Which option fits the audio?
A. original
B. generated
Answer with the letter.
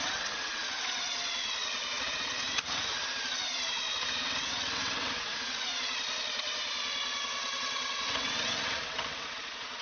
B